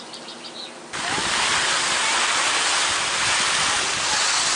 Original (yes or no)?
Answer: yes